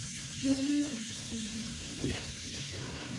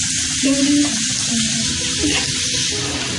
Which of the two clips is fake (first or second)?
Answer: first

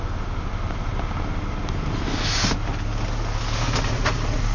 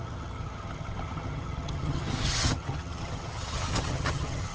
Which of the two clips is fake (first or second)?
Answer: second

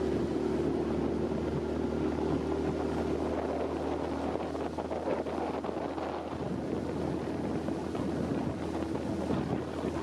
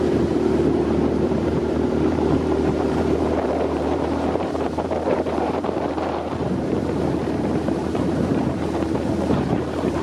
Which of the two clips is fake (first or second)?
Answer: second